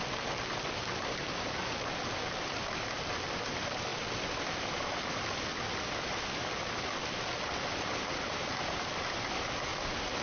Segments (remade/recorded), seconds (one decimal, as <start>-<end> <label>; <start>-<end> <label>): 0.0-10.2 recorded